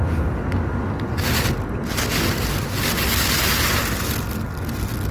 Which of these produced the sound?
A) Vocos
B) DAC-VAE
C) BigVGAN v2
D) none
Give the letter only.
D